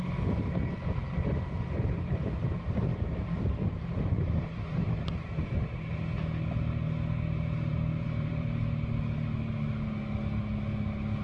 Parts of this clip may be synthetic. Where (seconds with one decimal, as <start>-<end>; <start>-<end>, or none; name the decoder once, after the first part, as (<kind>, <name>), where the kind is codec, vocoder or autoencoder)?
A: 2.9-5.2 (vocoder, BigVGAN v2); 7.7-8.6